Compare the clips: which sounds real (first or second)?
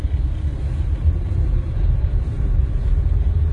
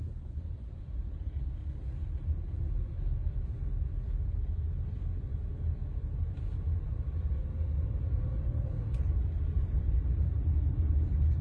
second